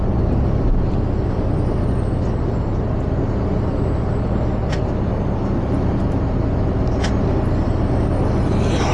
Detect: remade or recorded recorded